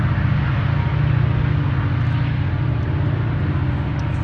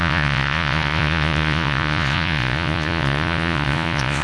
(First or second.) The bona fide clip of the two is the first